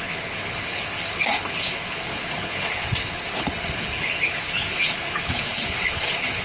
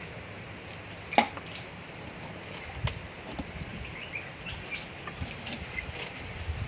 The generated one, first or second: first